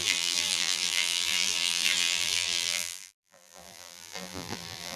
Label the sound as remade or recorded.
remade